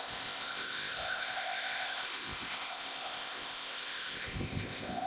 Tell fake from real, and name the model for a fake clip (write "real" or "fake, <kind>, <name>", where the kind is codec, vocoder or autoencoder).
fake, codec, ZipCodec